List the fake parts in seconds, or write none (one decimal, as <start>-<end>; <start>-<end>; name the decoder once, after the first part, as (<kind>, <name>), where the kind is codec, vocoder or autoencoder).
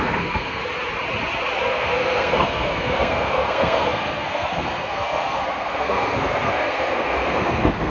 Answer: 0.0-0.6 (codec, SNAC); 1.6-7.9